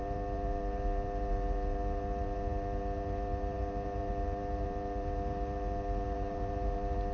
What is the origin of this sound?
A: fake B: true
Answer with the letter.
A